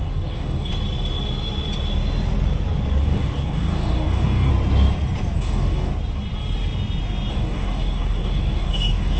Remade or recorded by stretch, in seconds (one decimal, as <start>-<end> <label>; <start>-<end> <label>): 0.0-0.7 remade; 0.7-3.0 recorded; 3.0-4.5 remade; 4.5-5.4 recorded; 5.4-5.9 remade; 5.9-7.3 recorded; 7.3-9.2 remade